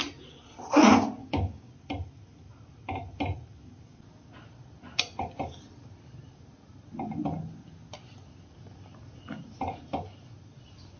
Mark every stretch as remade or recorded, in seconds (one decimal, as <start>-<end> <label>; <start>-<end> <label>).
0.0-1.2 recorded; 1.2-1.7 remade; 1.7-11.0 recorded